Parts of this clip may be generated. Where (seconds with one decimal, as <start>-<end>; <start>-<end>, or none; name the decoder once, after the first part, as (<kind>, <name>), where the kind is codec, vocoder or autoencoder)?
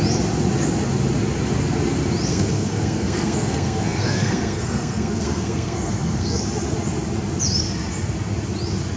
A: 2.3-6.4 (codec, SNAC)